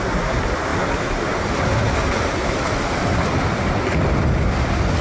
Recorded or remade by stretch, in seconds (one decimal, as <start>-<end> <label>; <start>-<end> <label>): 0.0-5.0 recorded